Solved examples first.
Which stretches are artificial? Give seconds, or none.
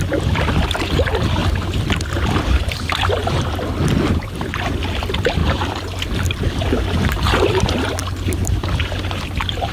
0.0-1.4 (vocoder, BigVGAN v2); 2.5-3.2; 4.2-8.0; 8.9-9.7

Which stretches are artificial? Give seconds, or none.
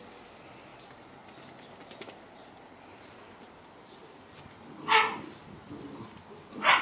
none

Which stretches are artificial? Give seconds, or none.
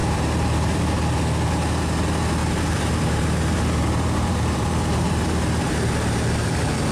0.0-0.8 (vocoder, BigVGAN v2); 2.4-6.5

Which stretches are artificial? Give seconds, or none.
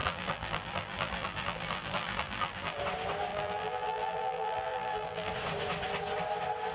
0.0-2.8 (vocoder, BigVGAN v2); 3.3-5.3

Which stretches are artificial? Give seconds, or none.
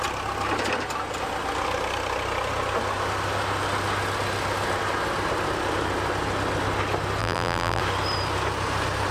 7.2-7.8 (vocoder, BigVGAN v2)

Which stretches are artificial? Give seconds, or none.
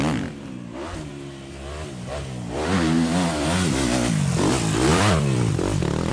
4.9-6.1 (vocoder, BigVGAN v2)